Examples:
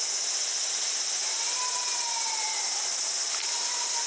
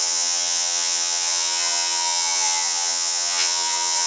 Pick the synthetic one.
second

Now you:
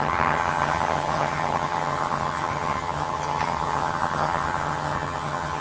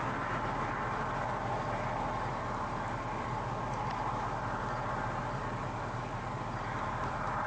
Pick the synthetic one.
first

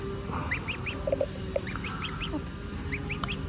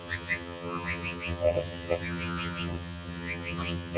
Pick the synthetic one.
second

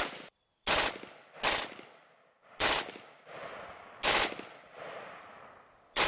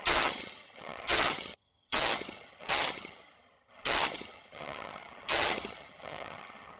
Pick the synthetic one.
second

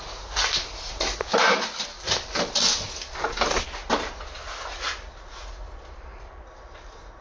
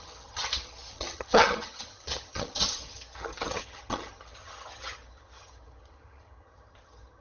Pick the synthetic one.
second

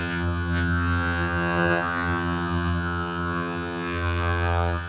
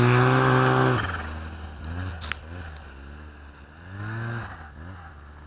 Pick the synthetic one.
first